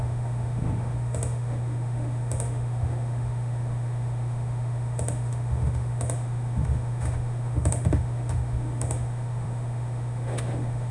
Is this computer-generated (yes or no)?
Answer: yes